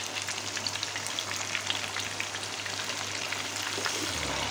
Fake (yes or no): no